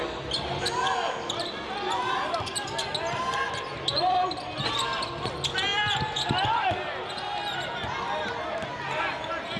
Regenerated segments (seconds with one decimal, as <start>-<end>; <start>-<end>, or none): none